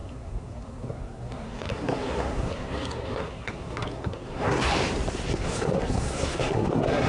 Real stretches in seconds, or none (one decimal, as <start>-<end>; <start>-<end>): 4.7-5.3